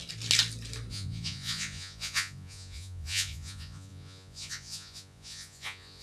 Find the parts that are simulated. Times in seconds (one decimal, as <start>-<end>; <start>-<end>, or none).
0.9-6.0